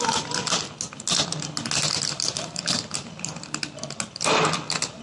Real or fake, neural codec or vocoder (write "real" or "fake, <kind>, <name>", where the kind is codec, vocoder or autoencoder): real